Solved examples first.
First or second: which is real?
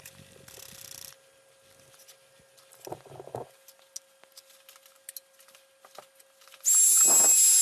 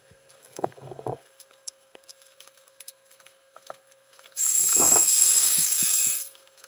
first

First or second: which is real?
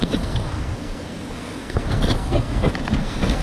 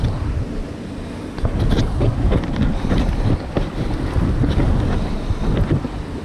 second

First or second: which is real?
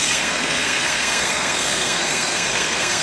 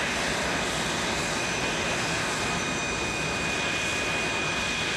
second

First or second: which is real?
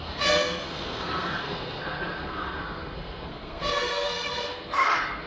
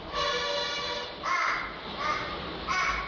second